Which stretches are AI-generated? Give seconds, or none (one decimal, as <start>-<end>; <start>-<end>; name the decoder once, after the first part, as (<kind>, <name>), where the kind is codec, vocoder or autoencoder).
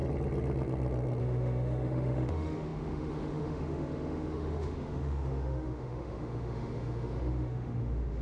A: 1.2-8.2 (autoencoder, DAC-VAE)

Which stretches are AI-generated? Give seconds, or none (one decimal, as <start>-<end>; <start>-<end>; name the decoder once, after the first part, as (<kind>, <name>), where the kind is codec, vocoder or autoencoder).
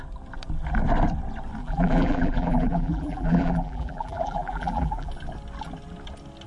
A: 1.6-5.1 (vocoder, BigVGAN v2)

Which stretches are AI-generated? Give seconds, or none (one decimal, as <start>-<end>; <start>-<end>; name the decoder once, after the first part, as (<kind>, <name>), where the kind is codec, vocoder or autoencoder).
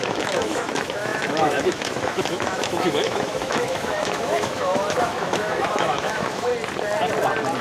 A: 0.0-6.5 (autoencoder, DAC-VAE)